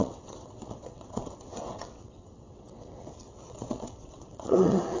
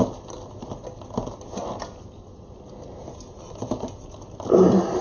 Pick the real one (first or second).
second